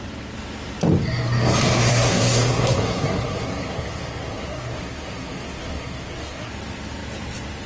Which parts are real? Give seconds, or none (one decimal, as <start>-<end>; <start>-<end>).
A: 0.0-1.9; 6.5-7.7